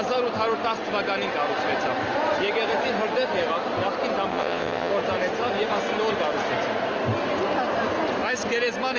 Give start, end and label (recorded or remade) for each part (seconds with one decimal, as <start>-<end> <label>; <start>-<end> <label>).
0.0-4.3 recorded; 4.3-4.9 remade; 4.9-9.0 recorded